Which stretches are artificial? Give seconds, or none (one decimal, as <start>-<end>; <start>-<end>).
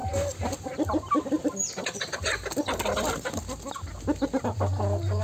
none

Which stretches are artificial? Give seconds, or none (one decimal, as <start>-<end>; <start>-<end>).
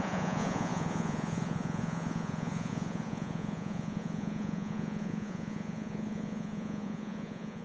0.0-7.6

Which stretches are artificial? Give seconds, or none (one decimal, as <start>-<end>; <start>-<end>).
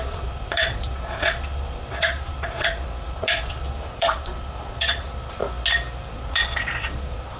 0.0-5.4; 6.1-7.4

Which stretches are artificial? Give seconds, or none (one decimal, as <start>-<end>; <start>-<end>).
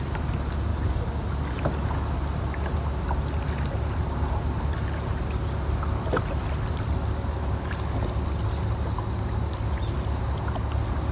none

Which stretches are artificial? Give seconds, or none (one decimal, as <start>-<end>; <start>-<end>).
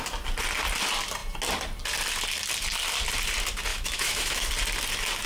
3.7-4.5